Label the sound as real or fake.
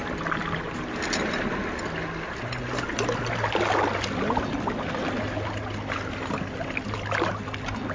real